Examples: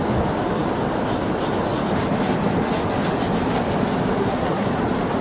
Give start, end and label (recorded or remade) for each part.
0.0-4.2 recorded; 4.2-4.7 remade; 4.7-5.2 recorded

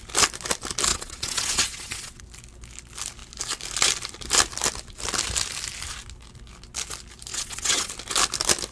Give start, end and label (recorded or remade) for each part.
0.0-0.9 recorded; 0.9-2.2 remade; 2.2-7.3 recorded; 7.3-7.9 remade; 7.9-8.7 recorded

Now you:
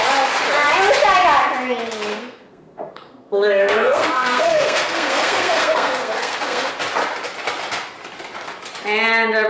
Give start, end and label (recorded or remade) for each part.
0.0-2.1 recorded; 2.1-6.7 remade; 6.7-9.5 recorded

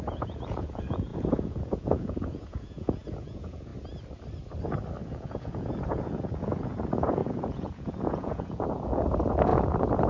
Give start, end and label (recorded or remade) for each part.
0.0-3.7 remade; 3.7-5.0 recorded; 5.0-10.1 remade

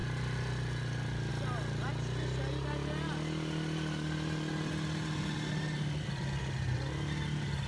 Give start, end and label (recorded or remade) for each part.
0.0-7.7 recorded

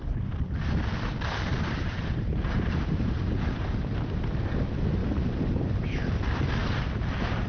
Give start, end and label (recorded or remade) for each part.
0.0-1.5 recorded; 1.5-4.2 remade; 4.2-5.0 recorded; 5.0-5.6 remade; 5.6-6.6 recorded; 6.6-7.5 remade